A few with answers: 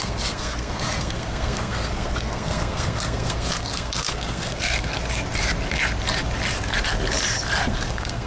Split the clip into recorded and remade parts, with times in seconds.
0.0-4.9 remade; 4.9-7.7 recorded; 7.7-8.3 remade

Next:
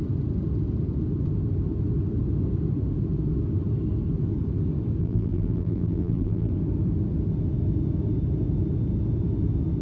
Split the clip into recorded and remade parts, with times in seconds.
0.0-5.0 recorded; 5.0-6.5 remade; 6.5-9.8 recorded

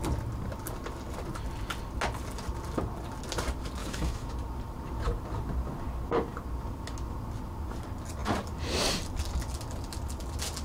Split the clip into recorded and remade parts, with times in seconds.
0.0-3.8 recorded; 3.8-4.3 remade; 4.3-10.6 recorded

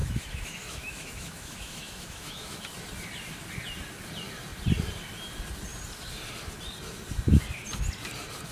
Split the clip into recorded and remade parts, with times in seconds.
0.0-2.7 remade; 2.7-8.5 recorded